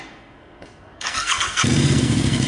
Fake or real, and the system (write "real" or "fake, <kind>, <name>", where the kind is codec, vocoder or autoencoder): fake, codec, SNAC